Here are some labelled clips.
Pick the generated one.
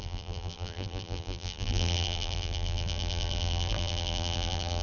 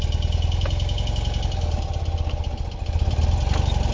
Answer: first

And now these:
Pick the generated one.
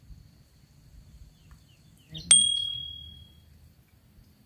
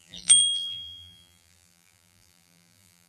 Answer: second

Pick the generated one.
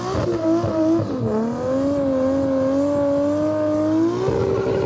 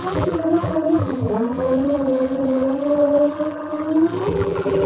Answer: second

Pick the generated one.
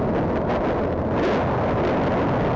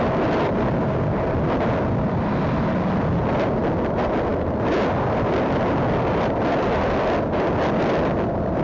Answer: second